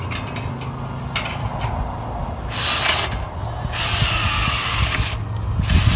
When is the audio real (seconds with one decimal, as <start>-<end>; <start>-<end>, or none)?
0.0-6.0